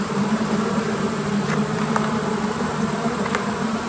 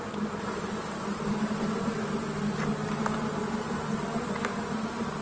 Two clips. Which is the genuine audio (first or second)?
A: second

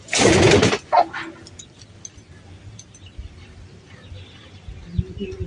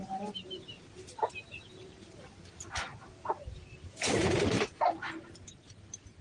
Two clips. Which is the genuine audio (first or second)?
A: first